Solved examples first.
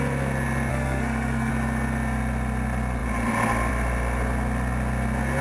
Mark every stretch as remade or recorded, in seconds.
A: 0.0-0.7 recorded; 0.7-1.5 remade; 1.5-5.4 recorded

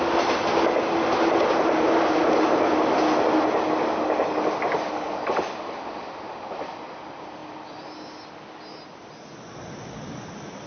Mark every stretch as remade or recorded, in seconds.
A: 0.0-10.7 recorded

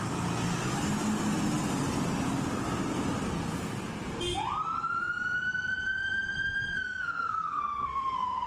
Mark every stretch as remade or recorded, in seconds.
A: 0.0-6.7 recorded; 6.7-8.5 remade

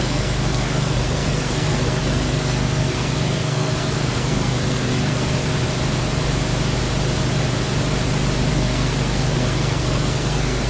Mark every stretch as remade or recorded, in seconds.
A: 0.0-5.5 remade; 5.5-8.5 recorded; 8.5-10.7 remade

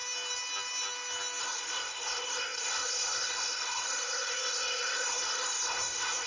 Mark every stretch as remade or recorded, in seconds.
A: 0.0-1.4 recorded; 1.4-6.3 remade

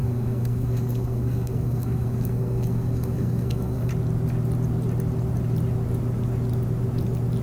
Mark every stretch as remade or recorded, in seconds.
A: 0.0-3.9 remade; 3.9-7.4 recorded

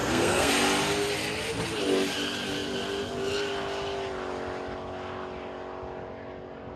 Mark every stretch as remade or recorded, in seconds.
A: 0.0-0.5 remade; 0.5-6.8 recorded

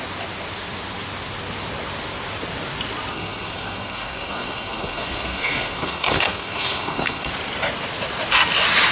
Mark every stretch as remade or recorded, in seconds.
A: 0.0-3.1 recorded; 3.1-7.3 remade; 7.3-8.9 recorded